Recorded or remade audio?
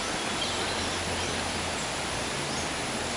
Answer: recorded